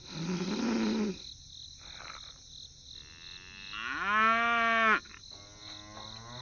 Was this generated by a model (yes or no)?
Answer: no